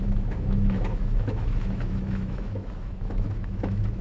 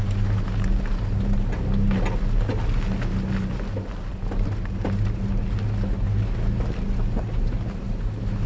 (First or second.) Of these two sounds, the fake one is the first